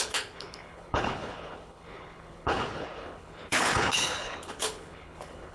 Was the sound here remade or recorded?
remade